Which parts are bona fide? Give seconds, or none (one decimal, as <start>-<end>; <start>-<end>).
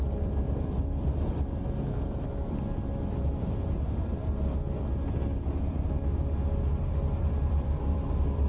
0.0-3.2; 4.2-7.5